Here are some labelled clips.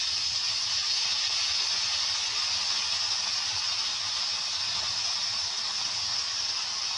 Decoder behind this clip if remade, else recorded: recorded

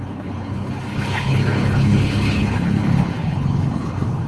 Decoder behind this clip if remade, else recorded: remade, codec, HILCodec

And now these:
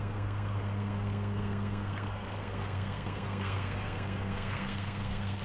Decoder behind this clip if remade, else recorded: remade, codec, SNAC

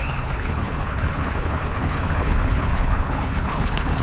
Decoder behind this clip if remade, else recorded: remade, codec, HILCodec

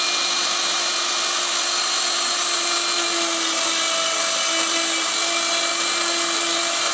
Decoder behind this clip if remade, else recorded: recorded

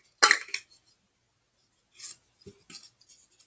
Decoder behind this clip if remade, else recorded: recorded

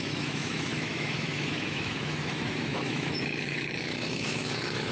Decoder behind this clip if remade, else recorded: remade, autoencoder, DAC-VAE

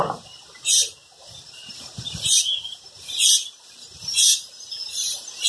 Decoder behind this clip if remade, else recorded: recorded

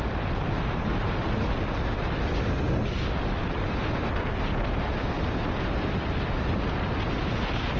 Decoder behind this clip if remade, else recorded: recorded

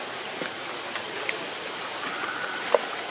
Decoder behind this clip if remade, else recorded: recorded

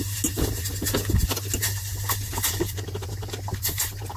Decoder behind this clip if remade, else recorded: recorded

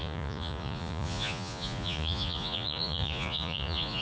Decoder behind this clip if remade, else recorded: remade, vocoder, Vocos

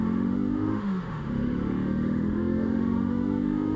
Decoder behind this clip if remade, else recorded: remade, autoencoder, DAC-VAE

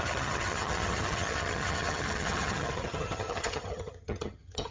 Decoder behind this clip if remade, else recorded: remade, vocoder, HiFi-GAN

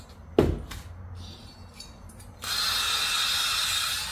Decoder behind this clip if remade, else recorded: recorded